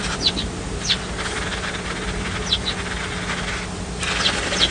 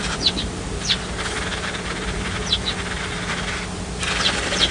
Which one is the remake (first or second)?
second